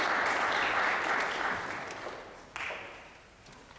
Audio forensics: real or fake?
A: real